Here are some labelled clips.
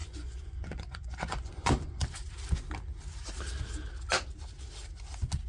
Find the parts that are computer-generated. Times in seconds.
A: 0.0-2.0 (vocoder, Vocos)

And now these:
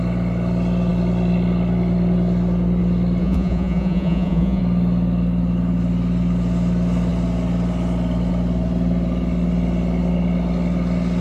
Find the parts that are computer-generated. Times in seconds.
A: 3.2-4.6 (vocoder, Vocos)

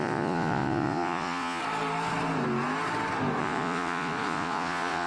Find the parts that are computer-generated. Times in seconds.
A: 0.0-1.6 (vocoder, Vocos); 3.4-5.1

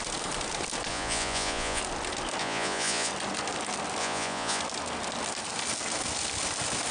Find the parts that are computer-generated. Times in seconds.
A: 0.9-1.8 (vocoder, Vocos); 2.4-3.1; 4.0-4.6

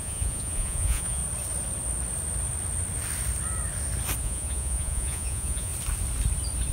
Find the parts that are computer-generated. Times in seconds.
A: 0.0-1.2 (vocoder, Vocos); 4.2-5.7

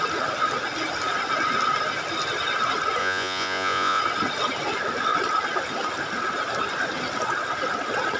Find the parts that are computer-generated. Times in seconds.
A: 3.0-4.0 (vocoder, Vocos)